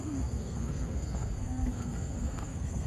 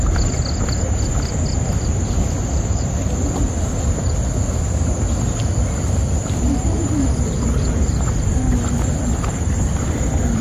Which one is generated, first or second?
first